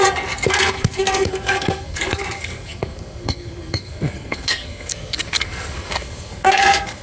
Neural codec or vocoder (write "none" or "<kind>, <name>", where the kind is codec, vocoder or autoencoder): codec, SNAC